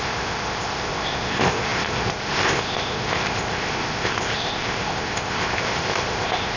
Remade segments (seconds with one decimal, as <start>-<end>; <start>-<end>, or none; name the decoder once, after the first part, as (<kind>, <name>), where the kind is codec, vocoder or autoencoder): 0.0-6.6 (codec, ZipCodec)